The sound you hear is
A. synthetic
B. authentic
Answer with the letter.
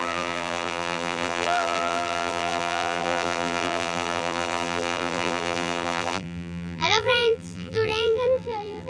A